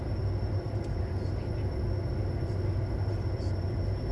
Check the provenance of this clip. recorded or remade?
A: recorded